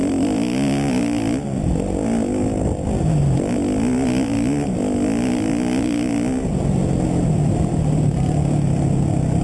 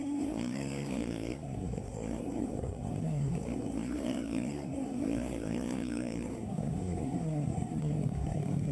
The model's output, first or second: second